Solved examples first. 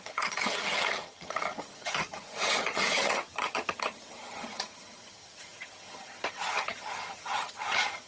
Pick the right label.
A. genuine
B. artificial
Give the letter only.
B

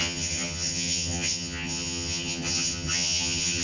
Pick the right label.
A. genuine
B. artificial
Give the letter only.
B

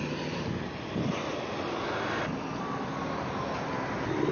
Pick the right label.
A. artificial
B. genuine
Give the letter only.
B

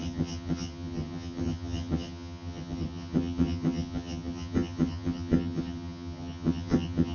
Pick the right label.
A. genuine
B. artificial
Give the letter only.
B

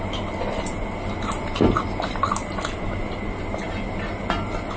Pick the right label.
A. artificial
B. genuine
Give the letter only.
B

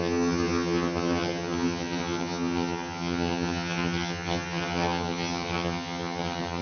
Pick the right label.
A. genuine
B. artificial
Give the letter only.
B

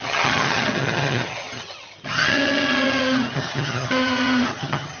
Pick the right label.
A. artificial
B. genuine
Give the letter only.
A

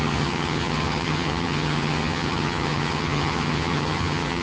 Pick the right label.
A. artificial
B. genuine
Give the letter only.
A